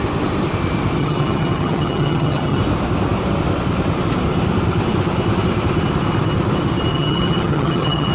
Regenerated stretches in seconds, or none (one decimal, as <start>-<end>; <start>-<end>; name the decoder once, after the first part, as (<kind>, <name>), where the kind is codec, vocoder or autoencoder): 1.0-2.6 (vocoder, HiFi-GAN); 6.9-8.1